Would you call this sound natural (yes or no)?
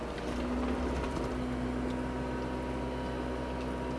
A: yes